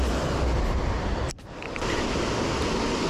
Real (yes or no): yes